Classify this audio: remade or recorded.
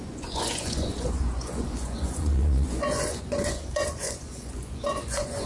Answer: remade